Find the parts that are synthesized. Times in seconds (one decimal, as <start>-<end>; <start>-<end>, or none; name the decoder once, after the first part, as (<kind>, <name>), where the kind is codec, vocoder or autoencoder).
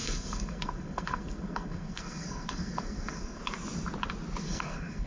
0.0-3.4 (codec, SNAC); 4.4-5.1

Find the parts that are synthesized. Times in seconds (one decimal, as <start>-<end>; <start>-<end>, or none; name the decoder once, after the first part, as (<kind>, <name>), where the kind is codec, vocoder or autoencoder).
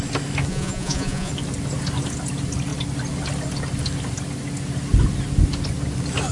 0.5-1.3 (vocoder, Vocos)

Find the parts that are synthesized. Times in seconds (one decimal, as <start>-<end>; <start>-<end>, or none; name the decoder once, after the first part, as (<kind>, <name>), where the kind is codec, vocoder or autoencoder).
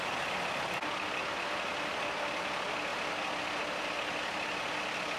none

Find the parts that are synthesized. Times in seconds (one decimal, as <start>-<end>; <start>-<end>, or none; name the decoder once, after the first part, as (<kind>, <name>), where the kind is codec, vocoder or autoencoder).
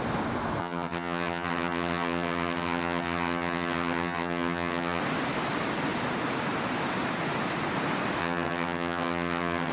0.6-5.0 (vocoder, HiFi-GAN); 8.2-9.7